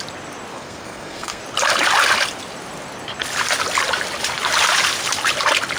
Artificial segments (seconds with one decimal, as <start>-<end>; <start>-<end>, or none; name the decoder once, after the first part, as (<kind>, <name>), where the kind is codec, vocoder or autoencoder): 0.5-1.4 (codec, SNAC)